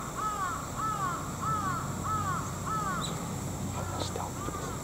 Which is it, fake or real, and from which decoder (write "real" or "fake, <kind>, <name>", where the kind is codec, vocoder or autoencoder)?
real